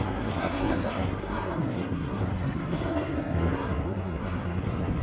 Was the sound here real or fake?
fake